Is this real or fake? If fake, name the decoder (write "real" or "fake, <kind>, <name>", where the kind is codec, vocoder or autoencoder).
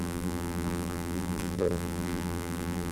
fake, vocoder, BigVGAN v2